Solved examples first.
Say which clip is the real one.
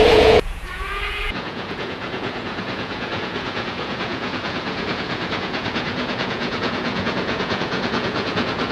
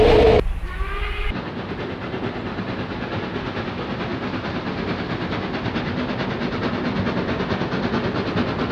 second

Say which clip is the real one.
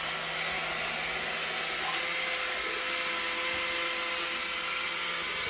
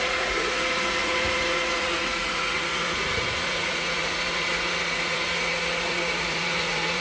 first